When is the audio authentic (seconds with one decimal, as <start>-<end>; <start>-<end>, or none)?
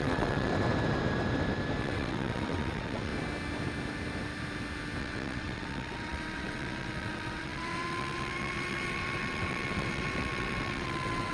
0.5-1.8; 3.1-5.0